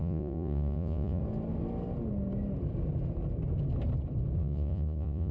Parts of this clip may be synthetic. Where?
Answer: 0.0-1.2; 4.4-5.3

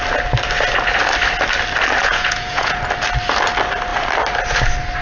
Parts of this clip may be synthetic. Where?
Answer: 2.0-2.8

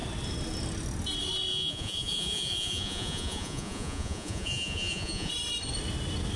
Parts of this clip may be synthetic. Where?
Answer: 1.5-5.3